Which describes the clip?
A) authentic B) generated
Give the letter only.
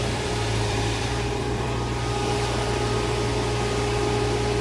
B